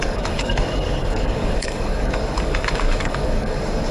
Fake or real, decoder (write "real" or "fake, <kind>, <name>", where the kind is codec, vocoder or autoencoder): fake, codec, DAC